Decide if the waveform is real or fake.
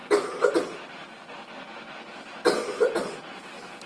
real